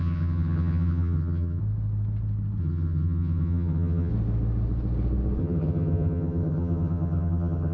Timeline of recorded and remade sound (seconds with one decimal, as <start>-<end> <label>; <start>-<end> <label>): 0.0-1.6 remade; 1.6-2.6 recorded; 2.6-4.1 remade; 4.1-5.4 recorded; 5.4-7.7 remade